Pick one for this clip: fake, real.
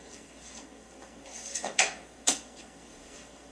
fake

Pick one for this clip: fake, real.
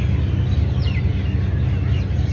real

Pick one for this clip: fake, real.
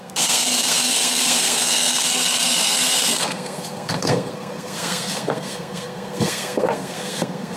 fake